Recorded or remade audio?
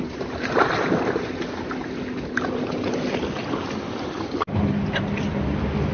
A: recorded